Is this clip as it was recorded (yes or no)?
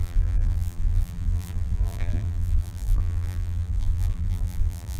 no